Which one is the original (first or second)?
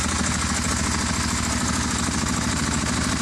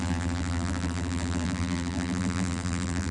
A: first